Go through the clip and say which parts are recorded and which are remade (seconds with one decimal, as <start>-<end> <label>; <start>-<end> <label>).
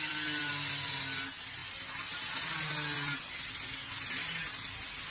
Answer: 0.0-5.1 recorded